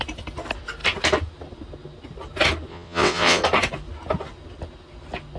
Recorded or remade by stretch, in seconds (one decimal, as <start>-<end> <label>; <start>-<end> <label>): 0.0-2.7 recorded; 2.7-3.4 remade; 3.4-5.4 recorded